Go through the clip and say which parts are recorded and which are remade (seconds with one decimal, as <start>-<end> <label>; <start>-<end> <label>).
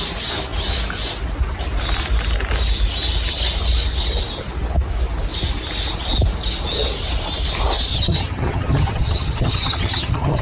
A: 0.0-7.9 recorded; 7.9-10.4 remade